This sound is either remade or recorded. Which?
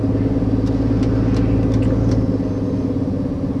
recorded